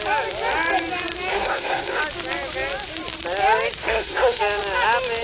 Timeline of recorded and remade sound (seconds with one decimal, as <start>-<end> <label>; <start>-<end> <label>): 0.0-1.3 recorded; 1.3-2.0 remade; 2.0-3.8 recorded; 3.8-4.4 remade; 4.4-5.2 recorded